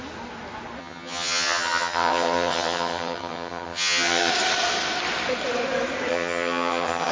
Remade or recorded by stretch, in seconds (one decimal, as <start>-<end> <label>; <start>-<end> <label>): 0.0-0.8 recorded; 0.8-4.3 remade; 4.3-6.1 recorded; 6.1-7.1 remade